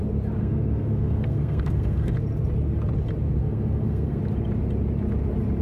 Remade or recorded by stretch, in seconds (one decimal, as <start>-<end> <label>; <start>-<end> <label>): 0.0-0.4 recorded; 0.4-2.1 remade; 2.1-3.4 recorded; 3.4-4.2 remade; 4.2-5.6 recorded

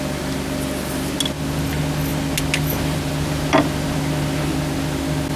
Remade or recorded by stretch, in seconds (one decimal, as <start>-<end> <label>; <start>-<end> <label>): 0.0-5.4 recorded

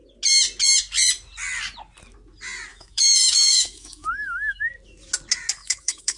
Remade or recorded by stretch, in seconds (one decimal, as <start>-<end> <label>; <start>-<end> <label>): 0.0-2.7 recorded; 2.7-4.7 remade; 4.7-5.6 recorded; 5.6-6.2 remade

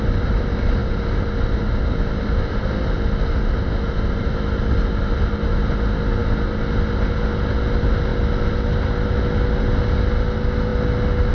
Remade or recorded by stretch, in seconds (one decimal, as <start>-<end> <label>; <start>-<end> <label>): 0.0-11.3 recorded